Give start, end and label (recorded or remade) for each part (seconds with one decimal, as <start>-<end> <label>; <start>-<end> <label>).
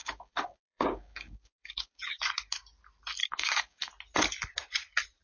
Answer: 0.0-2.2 remade; 2.2-3.2 recorded; 3.2-3.9 remade; 3.9-5.2 recorded